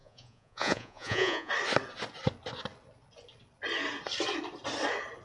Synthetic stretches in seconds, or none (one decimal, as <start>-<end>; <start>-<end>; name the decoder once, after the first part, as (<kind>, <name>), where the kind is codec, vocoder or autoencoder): 0.0-1.5 (vocoder, Vocos)